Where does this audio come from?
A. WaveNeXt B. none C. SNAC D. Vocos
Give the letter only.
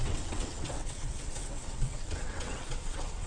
A